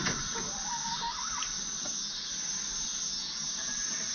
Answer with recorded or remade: recorded